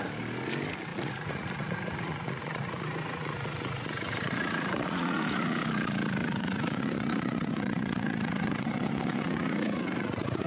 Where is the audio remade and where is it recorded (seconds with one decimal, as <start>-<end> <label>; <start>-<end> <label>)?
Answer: 0.0-0.9 recorded; 0.9-5.6 remade; 5.6-6.2 recorded; 6.2-10.5 remade